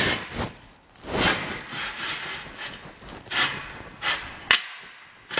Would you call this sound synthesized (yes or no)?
no